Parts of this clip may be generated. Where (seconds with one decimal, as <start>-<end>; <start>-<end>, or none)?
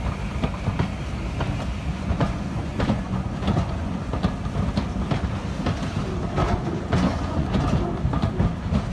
1.9-4.1; 6.4-7.6